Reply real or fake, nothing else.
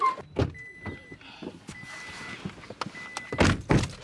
real